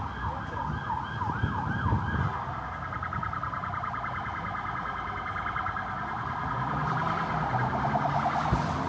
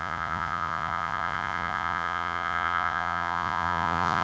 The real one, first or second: first